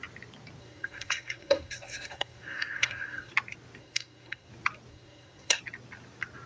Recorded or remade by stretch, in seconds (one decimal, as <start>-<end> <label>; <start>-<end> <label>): 0.0-0.6 recorded; 0.6-3.3 remade; 3.3-3.8 recorded; 3.8-4.5 remade; 4.5-4.9 recorded; 4.9-5.6 remade; 5.6-6.5 recorded

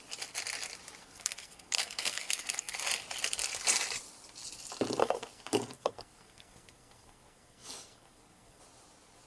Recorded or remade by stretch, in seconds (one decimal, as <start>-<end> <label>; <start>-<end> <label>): 0.0-1.0 recorded; 1.0-2.7 remade; 2.7-5.0 recorded; 5.0-8.6 remade; 8.6-9.3 recorded

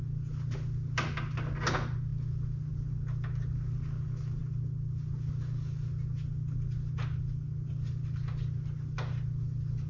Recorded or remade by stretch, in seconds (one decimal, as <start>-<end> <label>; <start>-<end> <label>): 0.0-9.9 recorded

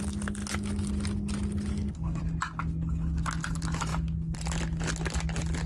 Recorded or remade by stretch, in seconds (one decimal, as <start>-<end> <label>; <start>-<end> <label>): 0.0-1.7 recorded; 1.7-2.2 remade; 2.2-5.7 recorded

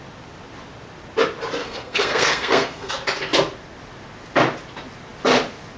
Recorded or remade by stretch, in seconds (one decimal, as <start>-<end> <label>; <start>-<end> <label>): 0.0-1.6 recorded; 1.6-2.9 remade; 2.9-5.8 recorded

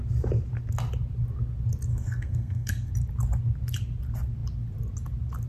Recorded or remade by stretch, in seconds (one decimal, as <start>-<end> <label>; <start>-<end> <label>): 0.0-1.9 recorded; 1.9-2.9 remade; 2.9-5.5 recorded

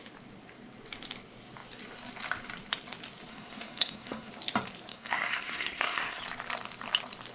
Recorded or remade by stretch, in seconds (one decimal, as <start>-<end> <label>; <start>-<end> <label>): 0.0-3.3 recorded; 3.3-4.3 remade; 4.3-4.9 recorded; 4.9-6.2 remade; 6.2-7.3 recorded

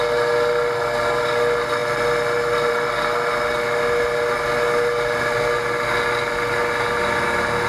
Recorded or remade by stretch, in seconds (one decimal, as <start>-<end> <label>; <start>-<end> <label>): 0.0-7.7 recorded